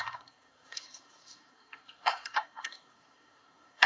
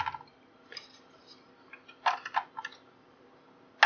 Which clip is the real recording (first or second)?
second